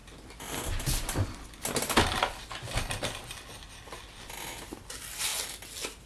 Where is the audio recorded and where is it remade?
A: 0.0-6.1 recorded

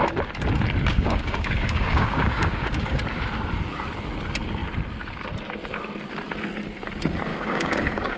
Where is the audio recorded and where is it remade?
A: 0.0-0.9 recorded; 0.9-3.0 remade; 3.0-7.3 recorded; 7.3-8.2 remade

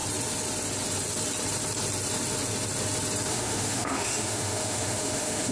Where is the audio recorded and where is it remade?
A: 0.0-3.3 recorded; 3.3-5.5 remade

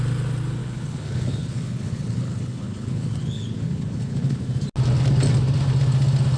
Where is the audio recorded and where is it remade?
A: 0.0-0.6 recorded; 0.6-4.4 remade; 4.4-6.4 recorded

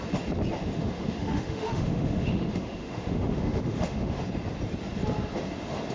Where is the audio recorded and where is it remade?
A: 0.0-0.8 recorded; 0.8-4.2 remade; 4.2-5.9 recorded

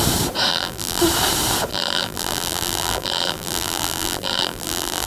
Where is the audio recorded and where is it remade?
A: 0.0-0.5 recorded; 0.5-1.0 remade; 1.0-1.7 recorded; 1.7-5.1 remade

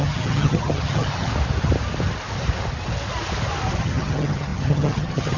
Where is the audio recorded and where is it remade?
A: 0.0-1.3 remade; 1.3-3.8 recorded; 3.8-5.4 remade